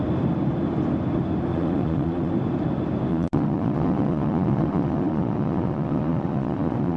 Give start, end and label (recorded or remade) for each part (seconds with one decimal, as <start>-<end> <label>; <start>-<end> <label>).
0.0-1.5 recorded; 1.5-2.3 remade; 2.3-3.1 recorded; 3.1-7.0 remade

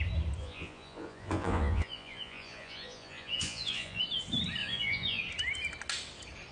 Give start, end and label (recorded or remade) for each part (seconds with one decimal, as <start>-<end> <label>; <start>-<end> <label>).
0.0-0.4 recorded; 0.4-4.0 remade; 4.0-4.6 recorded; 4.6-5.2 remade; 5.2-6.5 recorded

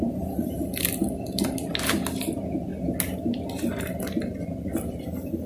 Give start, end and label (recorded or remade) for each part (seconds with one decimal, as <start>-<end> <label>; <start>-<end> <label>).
0.0-5.5 recorded

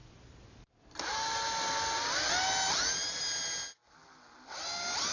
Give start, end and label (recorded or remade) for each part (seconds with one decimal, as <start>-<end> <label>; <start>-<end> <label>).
0.0-5.1 recorded

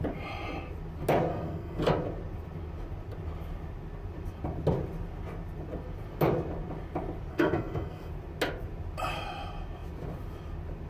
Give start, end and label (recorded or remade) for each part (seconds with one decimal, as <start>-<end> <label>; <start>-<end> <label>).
0.0-1.3 recorded; 1.3-1.8 remade; 1.8-7.3 recorded; 7.3-8.1 remade; 8.1-10.9 recorded

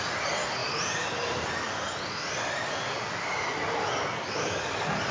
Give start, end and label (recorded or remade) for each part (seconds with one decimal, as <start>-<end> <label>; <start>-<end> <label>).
0.0-5.1 recorded

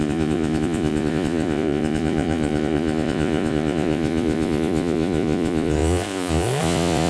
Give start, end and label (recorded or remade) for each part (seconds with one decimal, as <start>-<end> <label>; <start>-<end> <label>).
0.0-7.1 remade